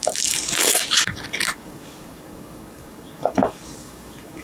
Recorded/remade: remade